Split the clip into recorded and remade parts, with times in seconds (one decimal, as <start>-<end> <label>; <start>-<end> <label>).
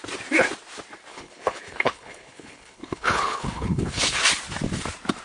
0.0-1.1 recorded; 1.1-4.2 remade; 4.2-5.2 recorded